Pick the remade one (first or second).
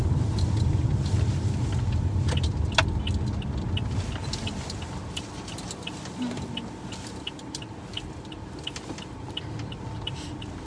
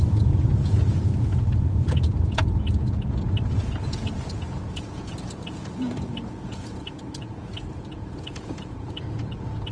second